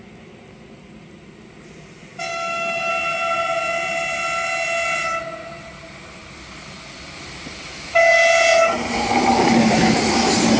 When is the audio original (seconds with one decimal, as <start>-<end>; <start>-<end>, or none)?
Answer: 0.0-2.3; 2.9-10.6